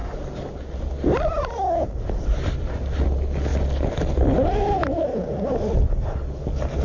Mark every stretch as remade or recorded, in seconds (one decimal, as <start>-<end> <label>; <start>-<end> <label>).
0.0-6.8 recorded